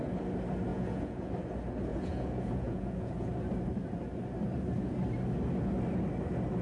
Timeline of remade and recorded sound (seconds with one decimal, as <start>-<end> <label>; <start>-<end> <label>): 0.0-0.7 recorded; 0.7-1.3 remade; 1.3-1.9 recorded; 1.9-3.3 remade; 3.3-6.6 recorded